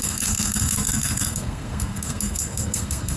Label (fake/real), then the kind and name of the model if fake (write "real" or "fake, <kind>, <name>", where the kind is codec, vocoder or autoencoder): fake, codec, SNAC